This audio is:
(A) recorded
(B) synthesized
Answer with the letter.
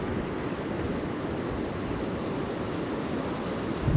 A